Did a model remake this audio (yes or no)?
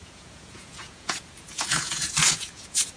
yes